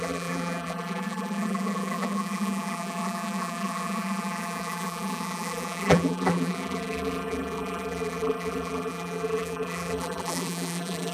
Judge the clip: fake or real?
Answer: fake